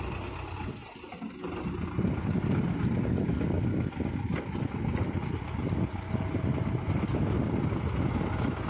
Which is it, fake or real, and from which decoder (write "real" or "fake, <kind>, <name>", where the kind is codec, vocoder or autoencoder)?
real